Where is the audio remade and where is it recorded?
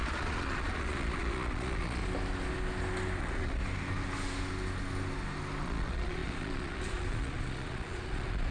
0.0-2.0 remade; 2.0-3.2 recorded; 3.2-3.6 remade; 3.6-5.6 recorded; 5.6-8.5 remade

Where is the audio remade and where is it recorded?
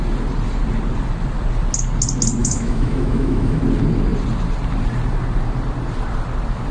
0.0-2.4 recorded; 2.4-3.6 remade; 3.6-6.7 recorded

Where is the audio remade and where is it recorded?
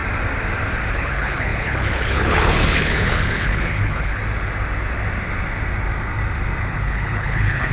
0.0-0.9 recorded; 0.9-4.2 remade; 4.2-6.6 recorded; 6.6-7.7 remade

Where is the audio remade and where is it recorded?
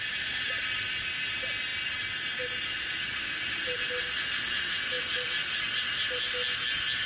0.0-7.1 recorded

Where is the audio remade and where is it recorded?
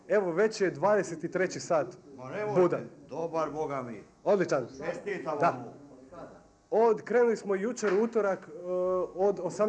0.0-3.2 recorded; 3.2-4.5 remade; 4.5-5.1 recorded; 5.1-5.9 remade; 5.9-8.6 recorded; 8.6-9.7 remade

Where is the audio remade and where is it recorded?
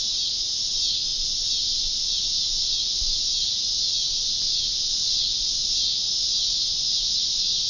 0.0-7.7 recorded